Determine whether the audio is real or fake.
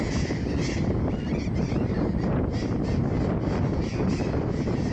real